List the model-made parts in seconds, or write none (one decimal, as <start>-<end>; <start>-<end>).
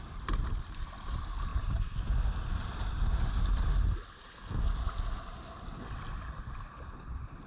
none